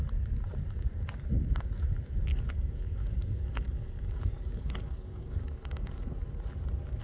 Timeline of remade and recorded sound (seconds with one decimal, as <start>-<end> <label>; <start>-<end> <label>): 0.0-2.3 recorded; 2.3-6.1 remade; 6.1-7.0 recorded